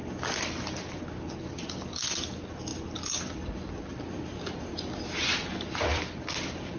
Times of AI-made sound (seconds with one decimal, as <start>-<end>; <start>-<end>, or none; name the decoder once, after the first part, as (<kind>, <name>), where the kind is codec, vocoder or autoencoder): 3.9-4.9 (vocoder, BigVGAN v2); 5.9-6.8